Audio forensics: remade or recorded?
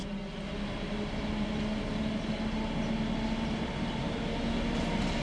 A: recorded